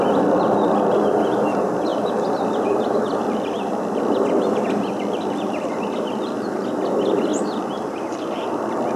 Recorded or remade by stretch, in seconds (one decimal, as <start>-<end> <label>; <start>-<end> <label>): 0.0-1.9 recorded; 1.9-6.1 remade; 6.1-9.0 recorded